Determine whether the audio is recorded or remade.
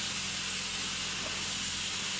recorded